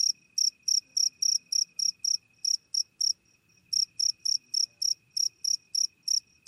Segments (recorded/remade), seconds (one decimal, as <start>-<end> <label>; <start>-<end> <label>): 0.0-6.5 recorded